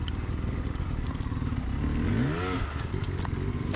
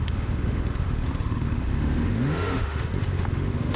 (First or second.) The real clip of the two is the first